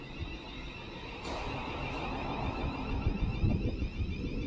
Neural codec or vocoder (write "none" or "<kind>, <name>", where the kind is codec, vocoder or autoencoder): none